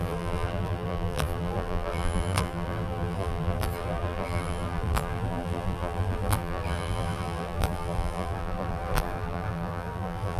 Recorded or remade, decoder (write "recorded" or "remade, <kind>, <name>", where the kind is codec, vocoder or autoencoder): remade, vocoder, BigVGAN v2